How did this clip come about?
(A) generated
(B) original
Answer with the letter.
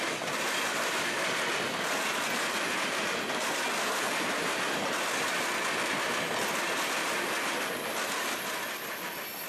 B